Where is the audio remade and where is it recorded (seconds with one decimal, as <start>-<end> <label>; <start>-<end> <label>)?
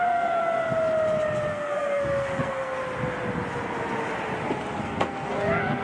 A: 0.0-0.4 remade; 0.4-1.5 recorded; 1.5-2.8 remade; 2.8-4.8 recorded; 4.8-5.8 remade